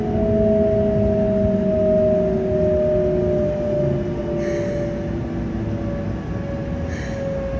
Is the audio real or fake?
real